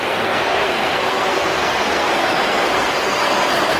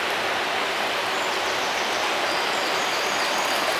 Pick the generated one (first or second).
first